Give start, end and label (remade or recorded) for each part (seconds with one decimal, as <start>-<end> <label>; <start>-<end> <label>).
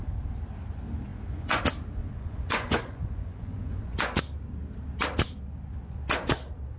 0.0-1.1 recorded; 1.1-1.6 remade; 1.6-2.0 recorded; 2.0-4.2 remade; 4.2-6.8 recorded